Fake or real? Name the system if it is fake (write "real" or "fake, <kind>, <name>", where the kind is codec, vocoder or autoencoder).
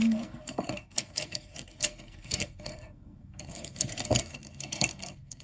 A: fake, codec, SNAC